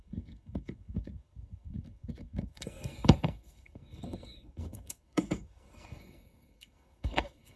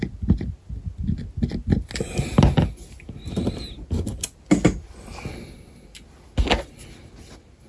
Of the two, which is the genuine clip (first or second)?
second